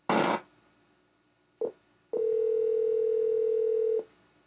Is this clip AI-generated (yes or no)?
no